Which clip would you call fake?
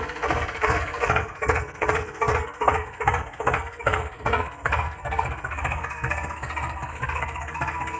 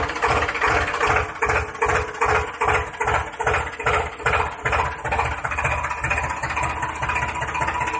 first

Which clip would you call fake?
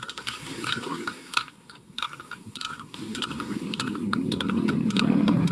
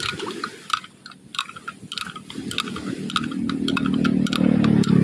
first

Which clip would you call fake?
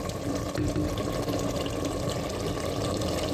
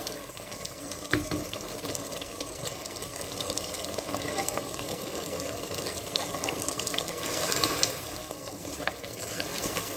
second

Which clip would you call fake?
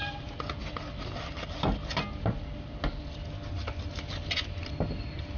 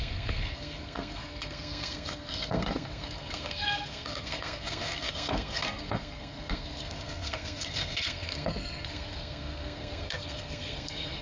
second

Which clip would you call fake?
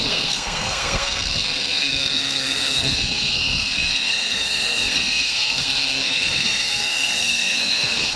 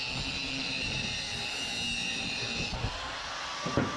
first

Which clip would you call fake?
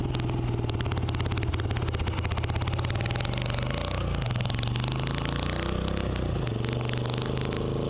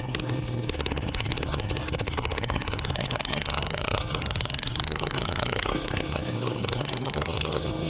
second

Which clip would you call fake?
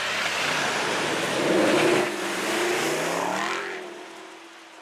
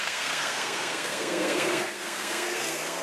second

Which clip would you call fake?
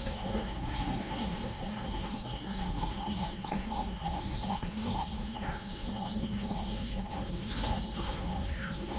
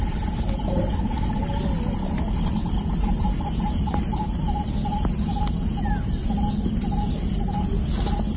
first